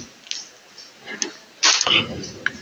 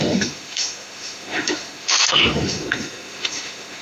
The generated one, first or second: second